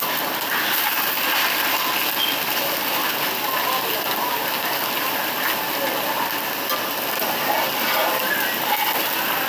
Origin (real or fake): real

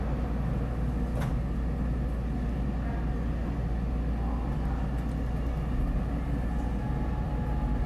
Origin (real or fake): real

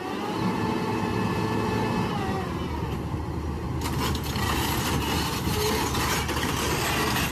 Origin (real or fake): real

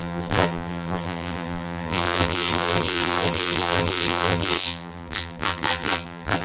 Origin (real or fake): fake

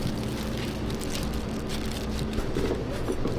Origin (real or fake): real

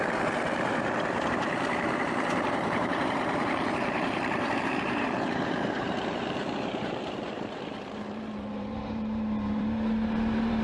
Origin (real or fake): fake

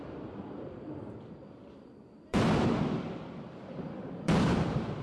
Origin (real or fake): fake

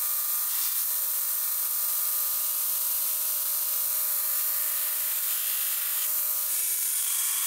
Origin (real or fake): real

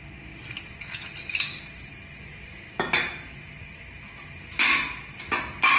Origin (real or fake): real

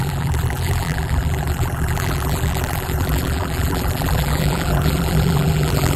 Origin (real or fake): fake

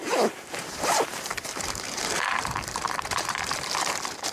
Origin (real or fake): fake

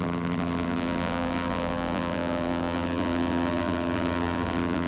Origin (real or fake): fake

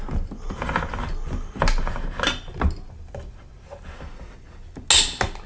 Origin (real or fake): real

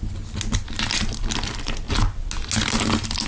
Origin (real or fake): real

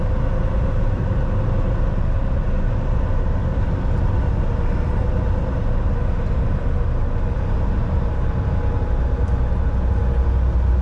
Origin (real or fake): real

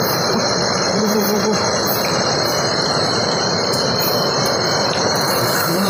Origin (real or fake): fake